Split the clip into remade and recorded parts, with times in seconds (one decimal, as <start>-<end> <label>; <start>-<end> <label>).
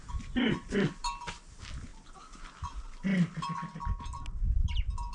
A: 0.0-5.1 recorded